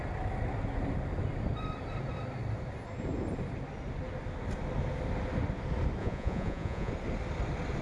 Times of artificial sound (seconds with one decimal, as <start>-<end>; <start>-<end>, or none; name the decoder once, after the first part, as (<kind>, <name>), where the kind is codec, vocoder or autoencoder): 6.0-6.9 (vocoder, Vocos)